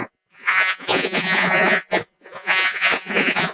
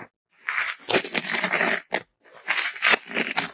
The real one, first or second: second